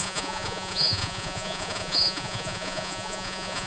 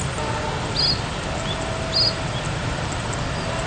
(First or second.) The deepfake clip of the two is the first